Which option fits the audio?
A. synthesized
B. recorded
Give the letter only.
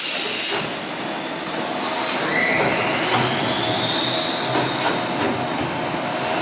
B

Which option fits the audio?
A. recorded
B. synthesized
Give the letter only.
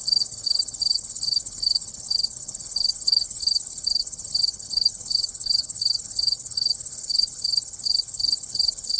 B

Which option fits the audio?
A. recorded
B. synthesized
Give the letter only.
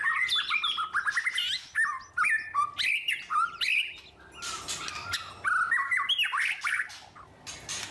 A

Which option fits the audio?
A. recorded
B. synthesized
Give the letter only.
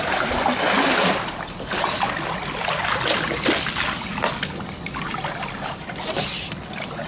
A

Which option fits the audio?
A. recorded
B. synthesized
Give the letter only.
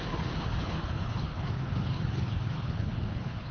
B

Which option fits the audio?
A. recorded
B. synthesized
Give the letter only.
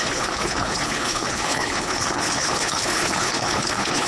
B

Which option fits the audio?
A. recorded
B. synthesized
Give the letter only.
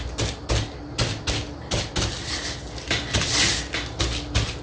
A